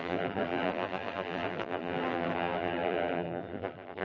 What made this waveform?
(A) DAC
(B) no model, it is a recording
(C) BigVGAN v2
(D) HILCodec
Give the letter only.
C